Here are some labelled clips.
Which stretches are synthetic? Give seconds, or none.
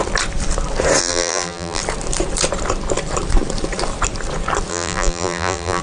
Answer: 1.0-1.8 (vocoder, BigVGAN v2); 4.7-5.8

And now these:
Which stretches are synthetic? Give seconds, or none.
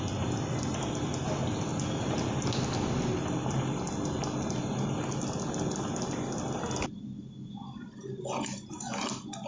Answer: none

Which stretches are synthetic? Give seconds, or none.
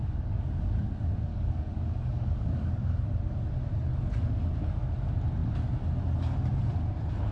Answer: 1.3-3.1 (codec, DAC)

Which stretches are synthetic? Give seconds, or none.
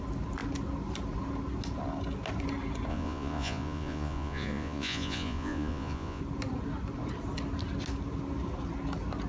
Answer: 2.9-6.2 (vocoder, Vocos)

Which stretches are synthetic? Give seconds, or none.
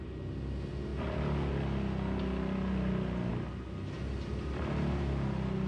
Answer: none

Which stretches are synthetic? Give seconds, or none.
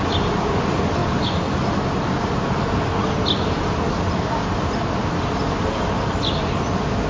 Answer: none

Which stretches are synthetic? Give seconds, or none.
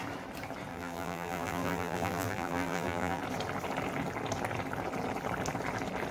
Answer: 0.7-3.2 (vocoder, BigVGAN v2)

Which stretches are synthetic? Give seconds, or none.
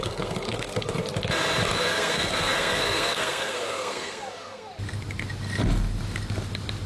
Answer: 0.0-1.0 (codec, SNAC); 1.8-4.7